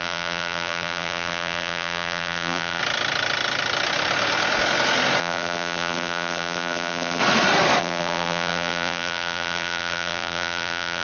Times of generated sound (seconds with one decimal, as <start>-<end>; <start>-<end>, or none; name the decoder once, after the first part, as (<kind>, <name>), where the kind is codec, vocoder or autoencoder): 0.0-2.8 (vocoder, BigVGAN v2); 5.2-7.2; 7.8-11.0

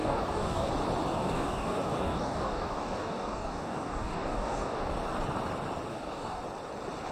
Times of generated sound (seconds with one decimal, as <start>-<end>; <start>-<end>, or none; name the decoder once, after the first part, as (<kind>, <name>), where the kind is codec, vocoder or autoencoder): 0.0-0.7 (codec, DAC); 1.1-4.9; 5.9-6.4

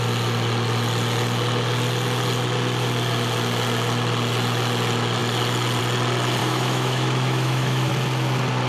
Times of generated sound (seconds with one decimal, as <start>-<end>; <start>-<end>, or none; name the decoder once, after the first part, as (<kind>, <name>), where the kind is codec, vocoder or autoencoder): 6.4-7.9 (autoencoder, DAC-VAE)